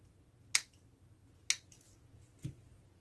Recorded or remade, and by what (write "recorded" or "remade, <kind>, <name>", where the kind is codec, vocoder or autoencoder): recorded